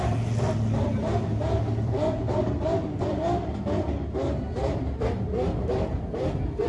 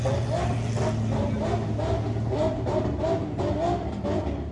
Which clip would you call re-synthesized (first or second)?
first